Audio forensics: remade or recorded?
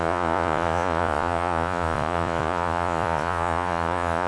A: remade